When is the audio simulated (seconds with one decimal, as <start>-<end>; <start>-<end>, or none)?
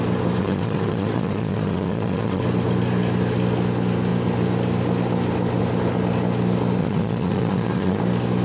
0.4-2.4; 6.8-8.0